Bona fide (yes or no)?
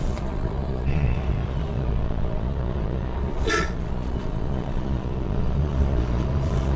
no